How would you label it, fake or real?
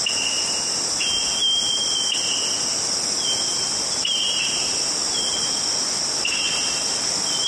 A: real